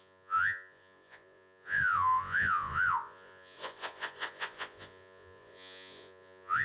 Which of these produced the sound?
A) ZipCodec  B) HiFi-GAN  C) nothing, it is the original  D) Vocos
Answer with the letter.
D